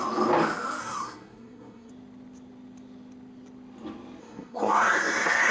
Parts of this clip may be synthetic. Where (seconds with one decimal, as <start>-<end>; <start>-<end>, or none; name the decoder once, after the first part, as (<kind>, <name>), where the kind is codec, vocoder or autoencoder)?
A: 0.8-1.9 (codec, SNAC); 4.2-5.5

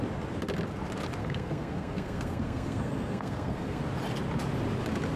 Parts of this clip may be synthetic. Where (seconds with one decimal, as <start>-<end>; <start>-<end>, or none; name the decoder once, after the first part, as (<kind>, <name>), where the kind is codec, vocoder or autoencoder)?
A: 1.2-3.8 (codec, SNAC)

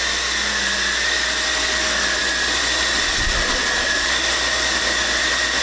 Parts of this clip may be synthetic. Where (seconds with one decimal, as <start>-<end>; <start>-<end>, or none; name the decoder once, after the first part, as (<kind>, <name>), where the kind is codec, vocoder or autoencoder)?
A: none